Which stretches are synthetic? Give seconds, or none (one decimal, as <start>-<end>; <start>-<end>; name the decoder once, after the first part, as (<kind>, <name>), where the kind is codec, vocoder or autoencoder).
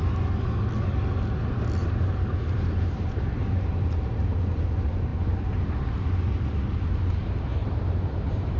1.8-4.1 (vocoder, BigVGAN v2); 7.6-8.6